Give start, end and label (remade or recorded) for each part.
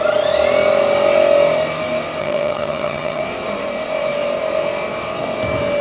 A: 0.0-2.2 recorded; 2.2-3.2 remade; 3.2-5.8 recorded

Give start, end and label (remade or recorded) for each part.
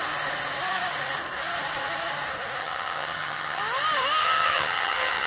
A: 0.0-2.6 recorded; 2.6-3.6 remade; 3.6-4.2 recorded; 4.2-5.3 remade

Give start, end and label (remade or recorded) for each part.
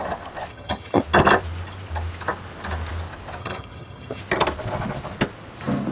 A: 0.0-0.5 recorded; 0.5-1.0 remade; 1.0-3.4 recorded; 3.4-4.2 remade; 4.2-5.9 recorded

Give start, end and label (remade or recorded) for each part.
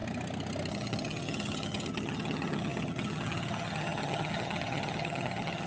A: 0.0-0.7 recorded; 0.7-5.7 remade